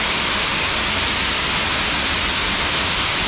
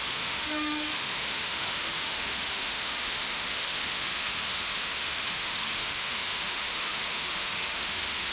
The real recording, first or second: first